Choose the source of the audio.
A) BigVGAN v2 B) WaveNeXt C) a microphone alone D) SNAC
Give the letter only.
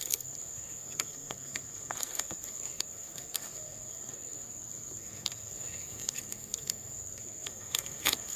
D